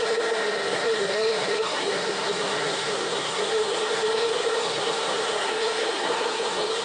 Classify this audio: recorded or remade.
remade